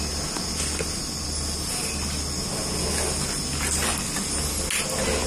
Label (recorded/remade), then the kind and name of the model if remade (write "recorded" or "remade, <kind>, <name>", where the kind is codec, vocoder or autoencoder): recorded